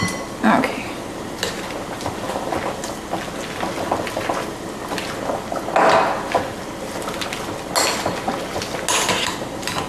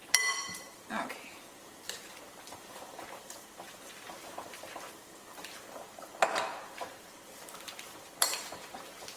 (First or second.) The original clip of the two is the first